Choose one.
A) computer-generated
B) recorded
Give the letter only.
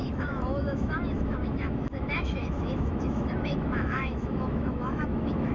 A